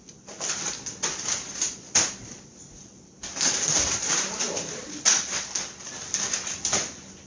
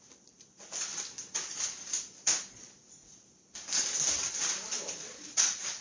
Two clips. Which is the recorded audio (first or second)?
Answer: second